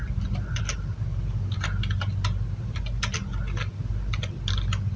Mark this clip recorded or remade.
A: recorded